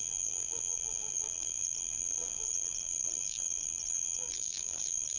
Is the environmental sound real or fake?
fake